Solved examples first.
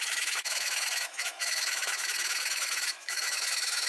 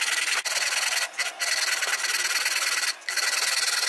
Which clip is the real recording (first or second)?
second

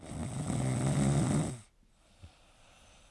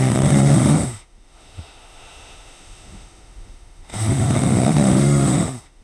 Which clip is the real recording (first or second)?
first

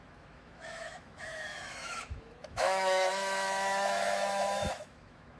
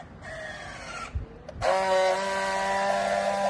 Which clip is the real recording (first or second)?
second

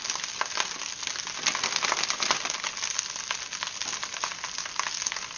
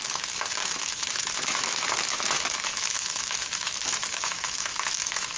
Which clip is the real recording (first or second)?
first